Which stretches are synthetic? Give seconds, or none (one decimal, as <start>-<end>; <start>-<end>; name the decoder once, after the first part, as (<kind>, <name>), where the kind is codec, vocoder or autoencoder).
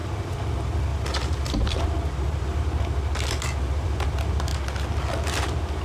0.9-2.6 (vocoder, BigVGAN v2)